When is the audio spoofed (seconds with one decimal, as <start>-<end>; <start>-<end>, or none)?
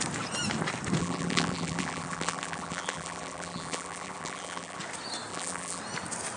1.0-4.8; 5.3-5.8